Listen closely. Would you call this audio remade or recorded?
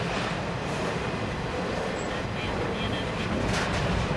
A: remade